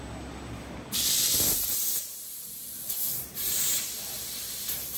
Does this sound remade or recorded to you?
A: recorded